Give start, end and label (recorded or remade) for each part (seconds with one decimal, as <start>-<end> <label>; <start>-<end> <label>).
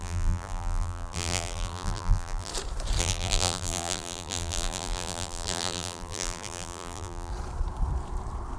0.0-2.5 remade; 2.5-3.0 recorded; 3.0-7.3 remade; 7.3-8.6 recorded